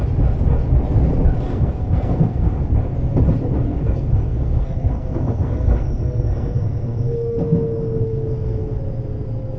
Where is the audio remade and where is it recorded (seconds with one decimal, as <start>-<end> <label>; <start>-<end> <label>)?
0.0-1.5 recorded; 1.5-2.7 remade; 2.7-3.7 recorded; 3.7-8.8 remade; 8.8-9.6 recorded